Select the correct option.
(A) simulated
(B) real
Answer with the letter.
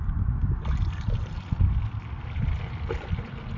B